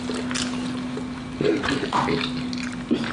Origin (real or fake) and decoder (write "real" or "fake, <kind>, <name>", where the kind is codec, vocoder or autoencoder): real